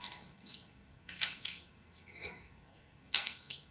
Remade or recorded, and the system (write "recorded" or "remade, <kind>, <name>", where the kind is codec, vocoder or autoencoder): remade, codec, SNAC